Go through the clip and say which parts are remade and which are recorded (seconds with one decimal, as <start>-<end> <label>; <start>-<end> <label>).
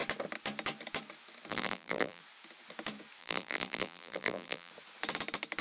0.0-1.5 recorded; 1.5-2.2 remade; 2.2-3.2 recorded; 3.2-4.7 remade; 4.7-5.6 recorded